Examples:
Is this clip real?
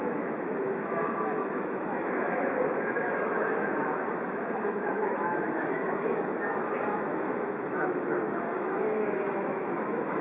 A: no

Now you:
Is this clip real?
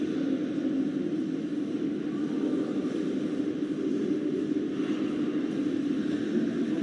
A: yes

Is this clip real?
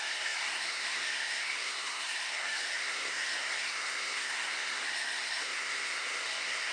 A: no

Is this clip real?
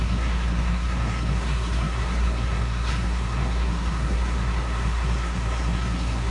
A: no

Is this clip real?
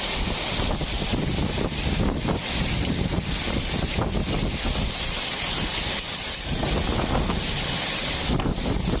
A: yes